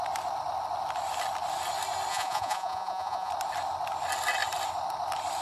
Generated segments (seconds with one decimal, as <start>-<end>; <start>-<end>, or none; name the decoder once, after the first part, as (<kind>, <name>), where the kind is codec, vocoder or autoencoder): 2.1-3.3 (vocoder, Vocos)